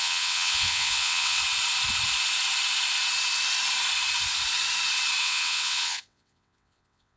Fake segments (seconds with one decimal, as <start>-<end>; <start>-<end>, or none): 0.0-1.4; 5.2-7.2

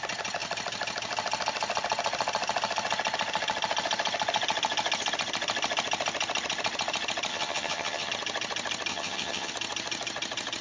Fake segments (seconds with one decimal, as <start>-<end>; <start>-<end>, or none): 7.3-8.1; 8.9-9.5